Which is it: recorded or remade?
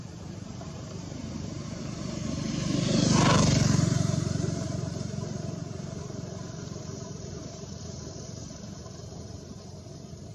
remade